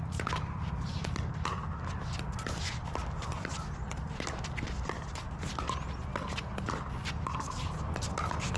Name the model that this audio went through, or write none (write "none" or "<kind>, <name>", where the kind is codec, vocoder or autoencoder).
none